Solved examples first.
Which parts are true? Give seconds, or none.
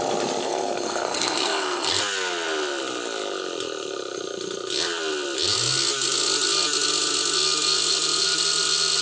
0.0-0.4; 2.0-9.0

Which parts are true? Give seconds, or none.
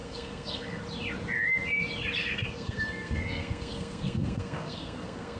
0.8-2.2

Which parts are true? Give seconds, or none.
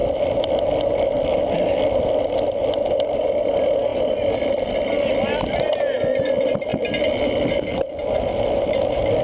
0.0-9.2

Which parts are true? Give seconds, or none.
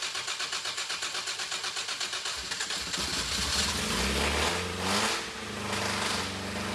0.0-6.7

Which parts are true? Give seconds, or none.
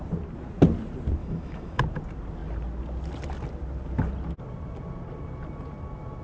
0.0-1.2; 1.8-6.2